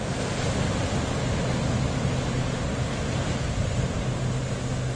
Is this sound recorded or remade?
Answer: recorded